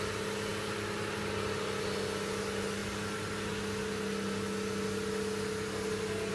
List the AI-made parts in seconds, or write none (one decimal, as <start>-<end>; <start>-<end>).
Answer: none